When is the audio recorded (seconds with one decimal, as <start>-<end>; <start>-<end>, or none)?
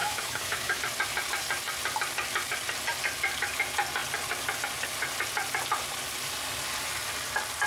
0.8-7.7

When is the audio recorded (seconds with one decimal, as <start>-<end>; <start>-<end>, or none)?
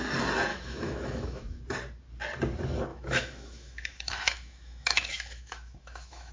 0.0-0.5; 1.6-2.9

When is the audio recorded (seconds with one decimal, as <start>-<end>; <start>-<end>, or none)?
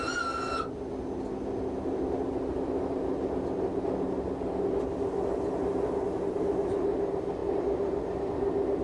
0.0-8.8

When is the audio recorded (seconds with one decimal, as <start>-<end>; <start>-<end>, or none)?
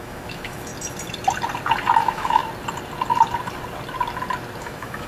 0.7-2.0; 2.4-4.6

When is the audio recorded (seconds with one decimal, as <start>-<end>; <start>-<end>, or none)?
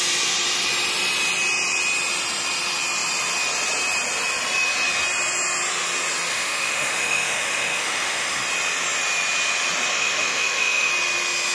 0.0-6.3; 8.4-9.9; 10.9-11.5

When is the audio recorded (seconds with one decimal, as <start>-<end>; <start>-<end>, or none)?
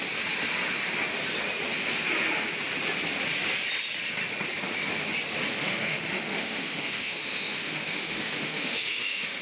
0.0-5.5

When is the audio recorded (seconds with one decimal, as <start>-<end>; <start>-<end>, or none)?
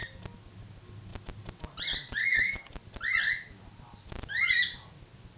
0.0-2.2; 2.7-5.4